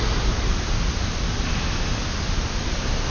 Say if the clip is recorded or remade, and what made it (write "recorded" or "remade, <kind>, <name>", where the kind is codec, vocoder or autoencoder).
recorded